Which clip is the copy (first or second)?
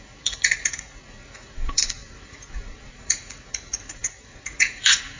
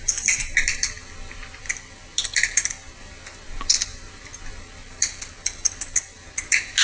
first